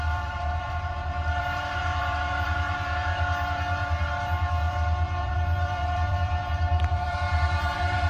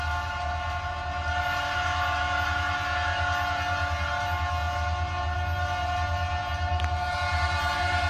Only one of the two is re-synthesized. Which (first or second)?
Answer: first